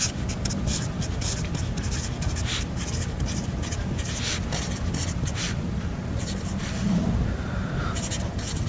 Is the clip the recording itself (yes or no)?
yes